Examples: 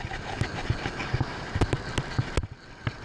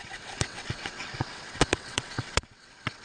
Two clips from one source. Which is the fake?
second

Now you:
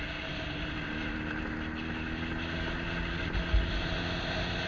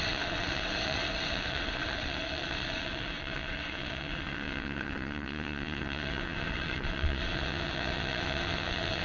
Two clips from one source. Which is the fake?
second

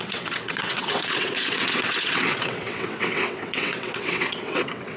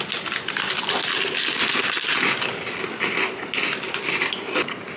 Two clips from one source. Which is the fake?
first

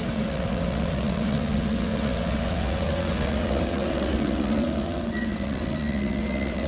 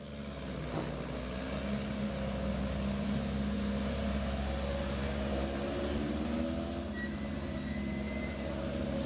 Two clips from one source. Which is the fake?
first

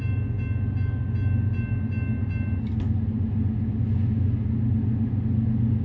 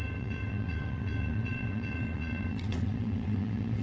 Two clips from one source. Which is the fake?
second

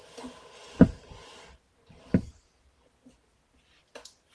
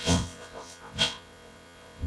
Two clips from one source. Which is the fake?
second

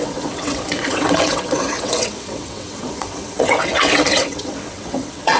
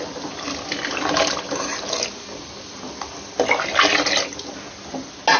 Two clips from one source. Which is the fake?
first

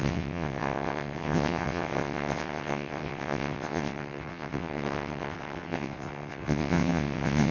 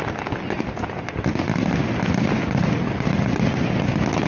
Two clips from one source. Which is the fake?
first